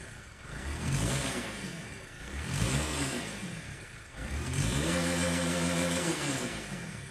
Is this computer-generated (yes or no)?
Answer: yes